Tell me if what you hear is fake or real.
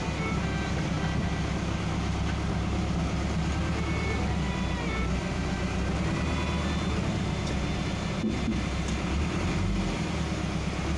real